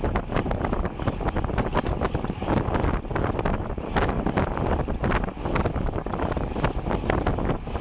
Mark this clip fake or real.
real